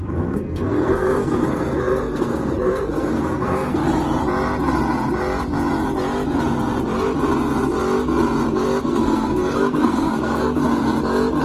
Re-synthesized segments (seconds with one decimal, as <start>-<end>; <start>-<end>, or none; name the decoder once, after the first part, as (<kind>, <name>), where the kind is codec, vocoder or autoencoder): 0.0-3.8 (codec, SNAC); 8.8-10.6